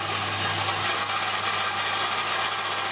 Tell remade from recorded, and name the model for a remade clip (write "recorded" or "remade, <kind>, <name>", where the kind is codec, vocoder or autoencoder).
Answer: recorded